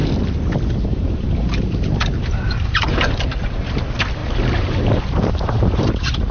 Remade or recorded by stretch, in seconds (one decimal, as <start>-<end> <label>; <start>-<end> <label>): 0.0-0.8 recorded; 0.8-6.3 remade